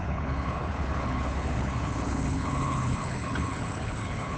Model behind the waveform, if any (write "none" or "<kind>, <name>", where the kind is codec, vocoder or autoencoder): codec, HILCodec